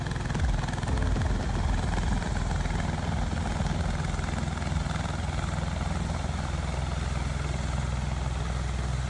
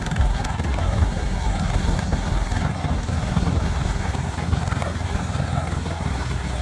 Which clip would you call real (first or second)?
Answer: first